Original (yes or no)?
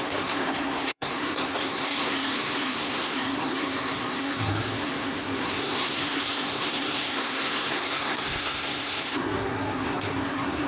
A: no